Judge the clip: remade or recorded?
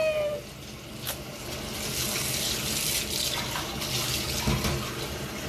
recorded